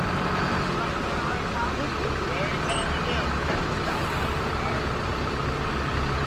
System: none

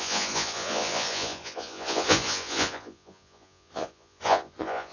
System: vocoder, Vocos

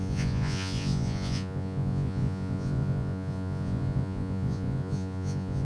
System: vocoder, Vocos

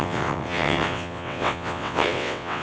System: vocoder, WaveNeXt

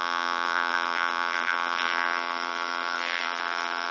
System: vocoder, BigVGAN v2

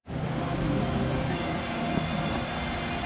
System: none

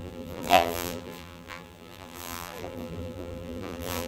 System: vocoder, BigVGAN v2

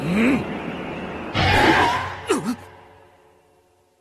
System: none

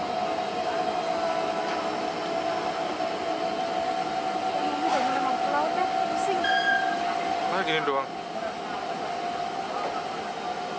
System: none